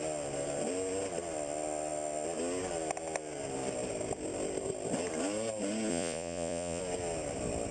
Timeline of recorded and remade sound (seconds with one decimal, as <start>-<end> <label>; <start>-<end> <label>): 0.0-5.9 recorded; 5.9-6.8 remade; 6.8-7.7 recorded